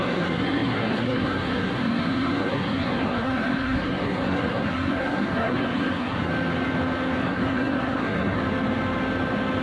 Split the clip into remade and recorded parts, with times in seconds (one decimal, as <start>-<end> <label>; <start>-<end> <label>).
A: 0.0-6.3 remade; 6.3-7.2 recorded; 7.2-8.4 remade; 8.4-9.6 recorded